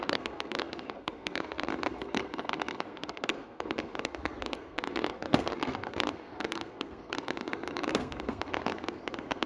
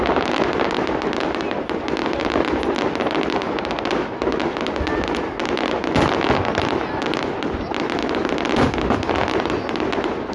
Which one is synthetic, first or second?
first